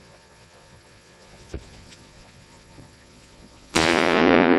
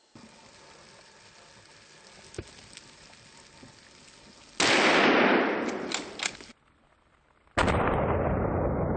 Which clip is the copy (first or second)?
first